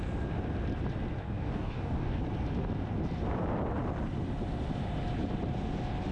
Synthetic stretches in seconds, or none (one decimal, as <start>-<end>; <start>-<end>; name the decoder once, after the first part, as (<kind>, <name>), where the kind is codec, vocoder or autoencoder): 1.2-2.2 (codec, DAC)

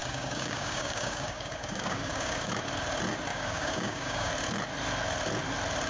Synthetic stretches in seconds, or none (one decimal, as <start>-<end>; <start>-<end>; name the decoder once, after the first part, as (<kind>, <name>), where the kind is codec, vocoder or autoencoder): 0.0-2.5 (codec, DAC); 3.3-4.3

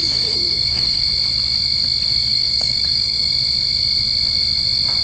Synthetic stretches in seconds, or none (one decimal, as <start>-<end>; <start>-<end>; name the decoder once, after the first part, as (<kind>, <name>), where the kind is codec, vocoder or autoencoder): 0.0-1.0 (codec, DAC); 2.3-3.3

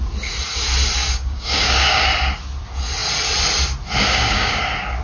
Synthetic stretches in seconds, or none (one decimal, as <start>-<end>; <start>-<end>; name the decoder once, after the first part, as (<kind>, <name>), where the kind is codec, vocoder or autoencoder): 1.0-2.0 (codec, DAC); 4.0-4.6

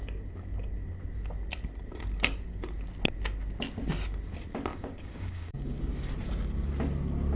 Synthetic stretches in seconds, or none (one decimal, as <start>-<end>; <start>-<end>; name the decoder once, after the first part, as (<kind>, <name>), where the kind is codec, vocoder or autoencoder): 4.7-5.8 (codec, DAC)